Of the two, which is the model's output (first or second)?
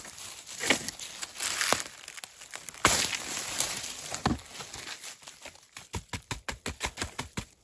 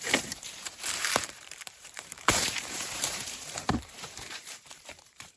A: second